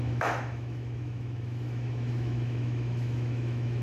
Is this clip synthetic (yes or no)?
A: yes